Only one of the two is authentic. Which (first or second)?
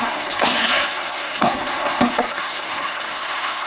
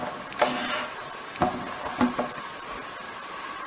second